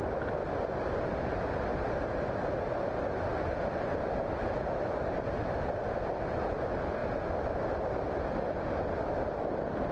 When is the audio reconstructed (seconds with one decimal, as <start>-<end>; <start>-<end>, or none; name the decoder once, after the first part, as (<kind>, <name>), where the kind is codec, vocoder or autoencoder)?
none

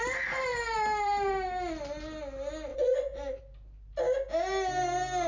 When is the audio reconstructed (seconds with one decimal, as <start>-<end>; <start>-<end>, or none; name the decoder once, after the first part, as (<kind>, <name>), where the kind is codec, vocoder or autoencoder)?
2.7-3.4 (vocoder, Vocos)